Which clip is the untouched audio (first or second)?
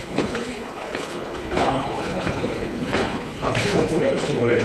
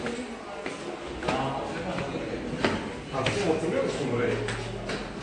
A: second